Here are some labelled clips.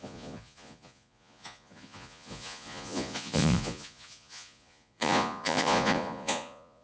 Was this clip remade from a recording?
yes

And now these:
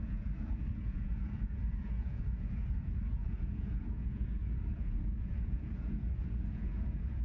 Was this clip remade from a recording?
yes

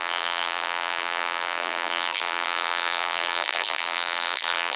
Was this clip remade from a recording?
yes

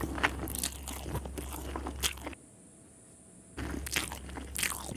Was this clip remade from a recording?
no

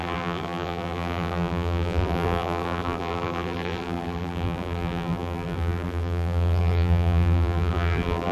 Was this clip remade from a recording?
yes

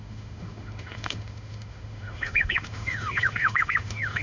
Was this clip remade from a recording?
yes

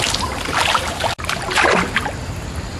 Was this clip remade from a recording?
no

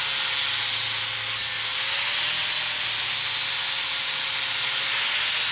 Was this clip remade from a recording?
no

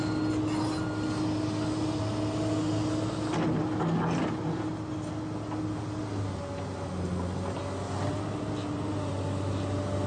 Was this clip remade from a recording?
no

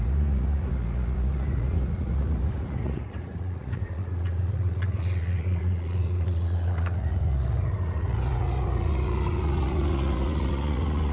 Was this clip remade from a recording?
yes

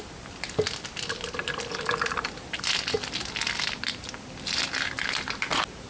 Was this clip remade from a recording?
no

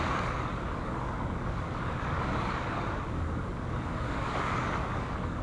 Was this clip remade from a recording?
yes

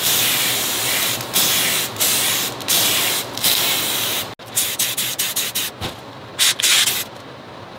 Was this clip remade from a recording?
no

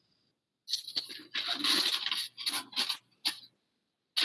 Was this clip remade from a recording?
no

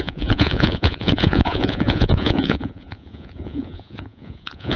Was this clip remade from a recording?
yes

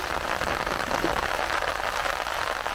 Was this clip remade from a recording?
no